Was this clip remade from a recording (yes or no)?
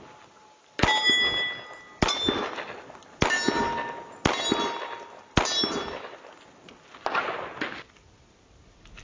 no